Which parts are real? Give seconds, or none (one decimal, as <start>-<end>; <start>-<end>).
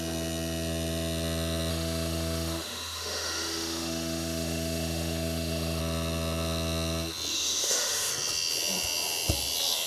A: 0.0-1.7; 5.8-7.3; 8.1-9.9